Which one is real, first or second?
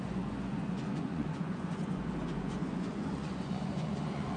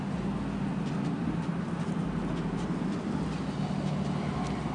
second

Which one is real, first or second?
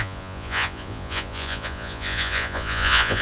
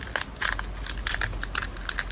second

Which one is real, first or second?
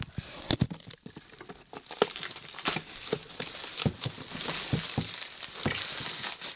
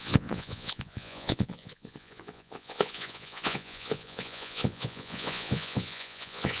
first